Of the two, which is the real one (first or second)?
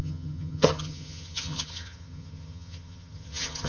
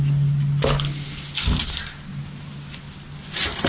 second